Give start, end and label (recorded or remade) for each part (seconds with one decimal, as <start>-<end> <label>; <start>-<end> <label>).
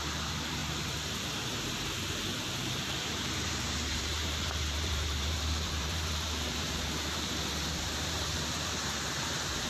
0.0-9.7 remade